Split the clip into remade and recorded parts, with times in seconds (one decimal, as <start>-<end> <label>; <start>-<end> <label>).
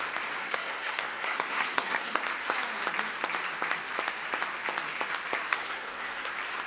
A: 0.0-0.4 recorded; 0.4-2.2 remade; 2.2-5.5 recorded; 5.5-6.3 remade; 6.3-6.7 recorded